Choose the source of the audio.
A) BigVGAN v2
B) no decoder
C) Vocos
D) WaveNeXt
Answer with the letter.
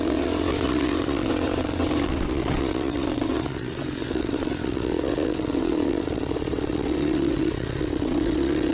D